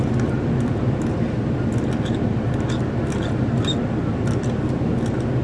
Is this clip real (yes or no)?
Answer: yes